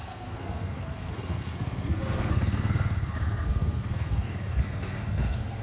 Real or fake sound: fake